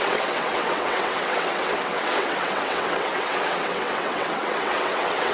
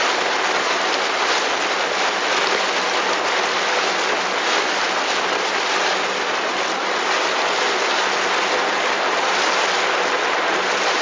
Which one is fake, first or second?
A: first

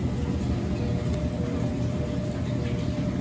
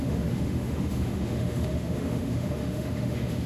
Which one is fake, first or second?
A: second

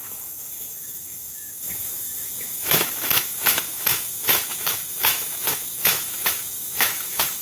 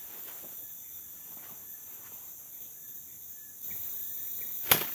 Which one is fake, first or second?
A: first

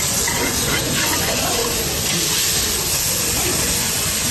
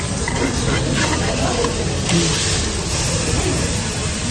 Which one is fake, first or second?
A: first